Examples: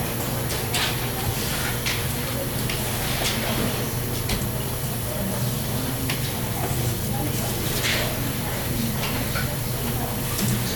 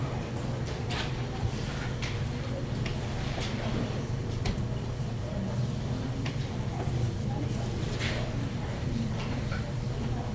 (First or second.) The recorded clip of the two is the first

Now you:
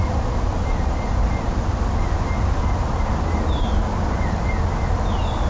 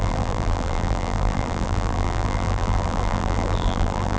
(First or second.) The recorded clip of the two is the first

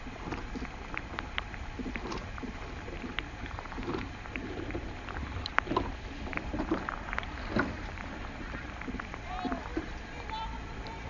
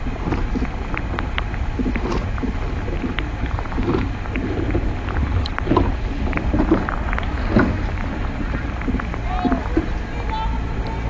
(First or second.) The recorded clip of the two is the second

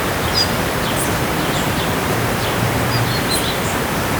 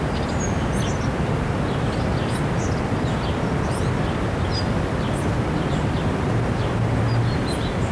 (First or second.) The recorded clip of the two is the second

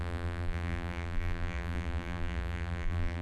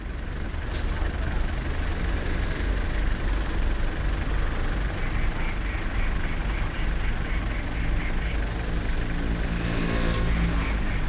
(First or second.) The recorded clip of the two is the second